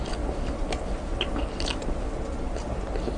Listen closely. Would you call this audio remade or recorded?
recorded